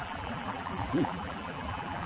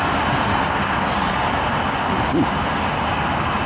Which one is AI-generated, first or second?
first